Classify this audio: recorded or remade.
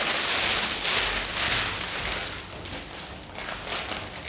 recorded